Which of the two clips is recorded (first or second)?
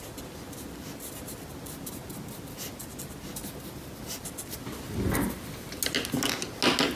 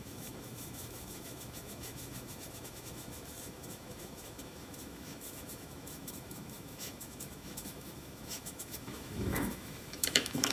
first